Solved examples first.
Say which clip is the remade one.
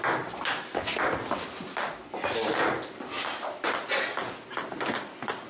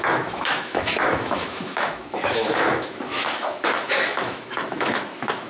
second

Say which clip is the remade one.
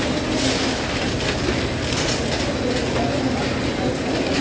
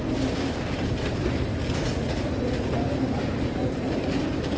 second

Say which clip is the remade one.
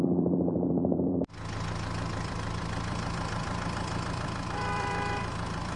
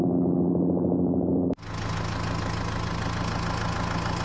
first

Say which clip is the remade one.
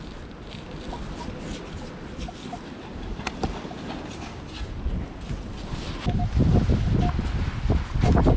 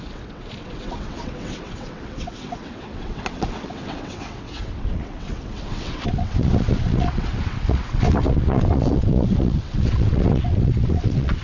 second